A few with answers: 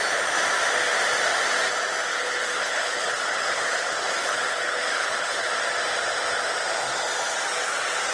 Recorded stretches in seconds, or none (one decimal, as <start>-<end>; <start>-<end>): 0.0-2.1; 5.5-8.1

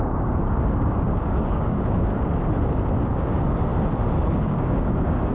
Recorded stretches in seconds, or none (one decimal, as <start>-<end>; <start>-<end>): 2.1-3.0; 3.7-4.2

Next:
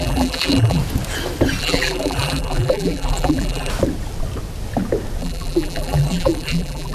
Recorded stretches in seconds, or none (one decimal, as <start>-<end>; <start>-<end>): 0.8-1.6; 3.7-5.2

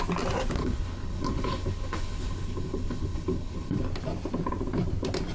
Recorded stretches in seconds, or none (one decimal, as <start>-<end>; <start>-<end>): 0.0-0.6; 3.8-5.3

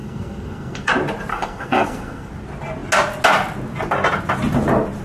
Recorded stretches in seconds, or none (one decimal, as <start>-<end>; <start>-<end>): 0.9-1.3; 2.3-5.0